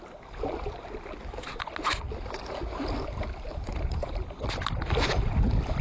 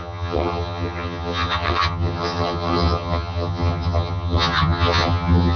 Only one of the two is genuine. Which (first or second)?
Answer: first